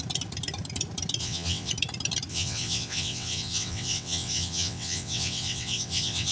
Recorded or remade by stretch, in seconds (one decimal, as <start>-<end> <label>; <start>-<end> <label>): 0.0-1.2 recorded; 1.2-1.7 remade; 1.7-2.3 recorded; 2.3-6.3 remade